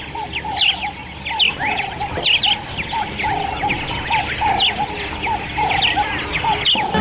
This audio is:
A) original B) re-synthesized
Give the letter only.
A